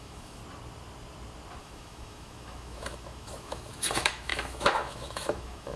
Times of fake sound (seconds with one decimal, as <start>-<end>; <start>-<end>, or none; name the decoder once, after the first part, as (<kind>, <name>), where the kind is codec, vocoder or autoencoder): 0.0-0.4 (autoencoder, DAC-VAE); 1.6-5.8